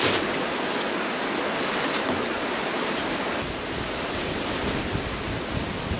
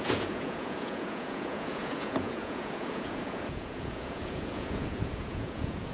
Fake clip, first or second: second